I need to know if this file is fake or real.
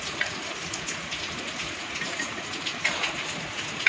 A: fake